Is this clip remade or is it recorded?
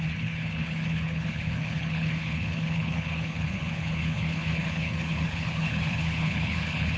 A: remade